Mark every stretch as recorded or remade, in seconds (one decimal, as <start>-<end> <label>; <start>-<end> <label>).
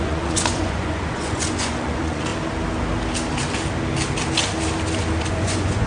0.0-2.3 remade; 2.3-5.3 recorded; 5.3-5.9 remade